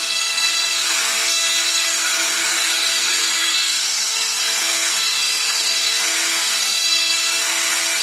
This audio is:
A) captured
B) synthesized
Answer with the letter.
B